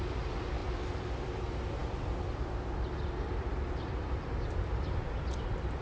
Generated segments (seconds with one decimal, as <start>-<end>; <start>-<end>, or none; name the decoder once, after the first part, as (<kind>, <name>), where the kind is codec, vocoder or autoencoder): none